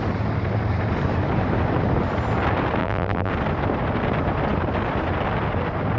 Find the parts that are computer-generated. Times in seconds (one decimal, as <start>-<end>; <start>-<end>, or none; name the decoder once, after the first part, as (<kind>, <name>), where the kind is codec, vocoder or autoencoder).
2.8-3.3 (vocoder, BigVGAN v2)